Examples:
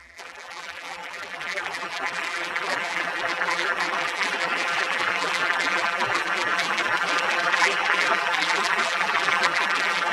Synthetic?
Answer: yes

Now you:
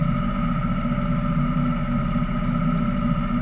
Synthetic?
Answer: no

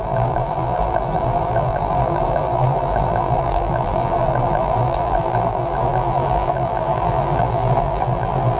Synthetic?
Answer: yes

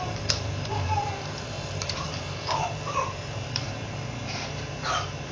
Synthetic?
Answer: yes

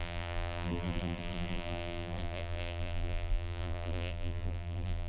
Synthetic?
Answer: yes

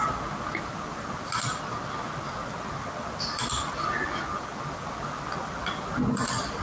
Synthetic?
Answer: no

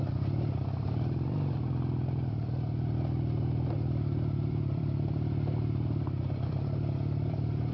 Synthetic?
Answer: yes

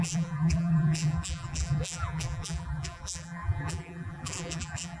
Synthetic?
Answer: yes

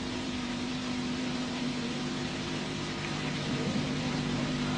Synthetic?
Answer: yes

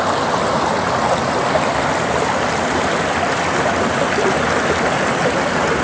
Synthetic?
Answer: no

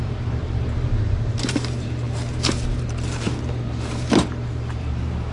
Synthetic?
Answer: yes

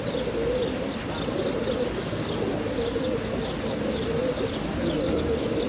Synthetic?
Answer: no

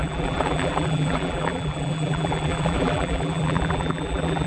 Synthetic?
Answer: yes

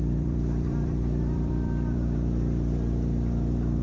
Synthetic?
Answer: yes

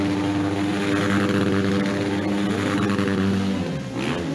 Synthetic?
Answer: no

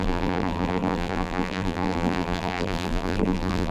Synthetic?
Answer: yes